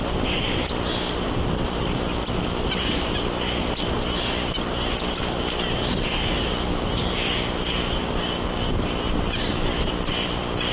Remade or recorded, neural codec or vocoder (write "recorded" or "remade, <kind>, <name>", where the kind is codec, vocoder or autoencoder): recorded